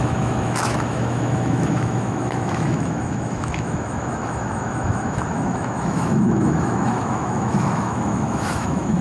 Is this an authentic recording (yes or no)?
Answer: no